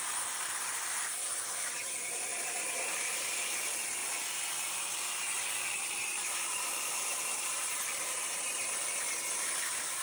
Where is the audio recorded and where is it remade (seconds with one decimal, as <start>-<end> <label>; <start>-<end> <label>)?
0.0-2.3 recorded; 2.3-3.2 remade; 3.2-6.1 recorded; 6.1-8.6 remade; 8.6-10.0 recorded